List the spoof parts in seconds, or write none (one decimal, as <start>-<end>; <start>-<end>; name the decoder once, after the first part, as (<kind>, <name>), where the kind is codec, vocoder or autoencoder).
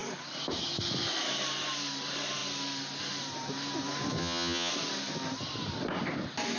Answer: 4.2-4.7 (vocoder, HiFi-GAN)